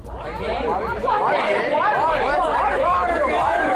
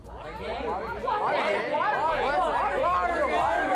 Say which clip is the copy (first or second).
first